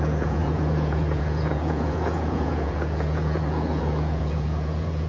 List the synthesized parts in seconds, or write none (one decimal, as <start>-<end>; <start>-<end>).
0.0-5.1